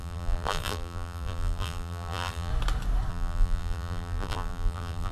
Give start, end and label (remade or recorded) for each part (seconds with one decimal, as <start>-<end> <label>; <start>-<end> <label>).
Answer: 0.0-2.5 remade; 2.5-3.1 recorded; 3.1-5.1 remade